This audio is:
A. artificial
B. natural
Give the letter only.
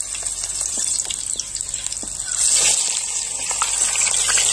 B